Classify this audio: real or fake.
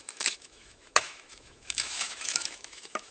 fake